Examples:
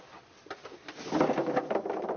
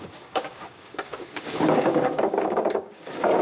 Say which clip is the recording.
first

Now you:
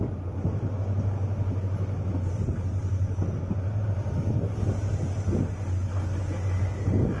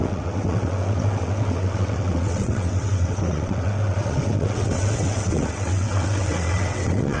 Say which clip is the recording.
first